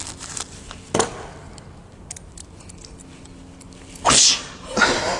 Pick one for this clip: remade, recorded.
recorded